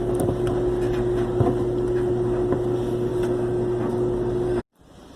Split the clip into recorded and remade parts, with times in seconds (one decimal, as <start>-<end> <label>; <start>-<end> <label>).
0.0-5.2 recorded